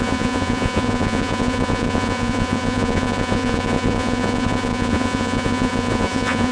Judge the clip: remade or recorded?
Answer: remade